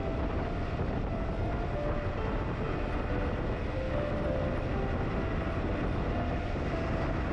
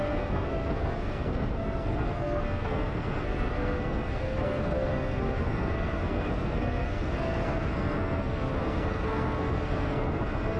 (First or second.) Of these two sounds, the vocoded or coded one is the second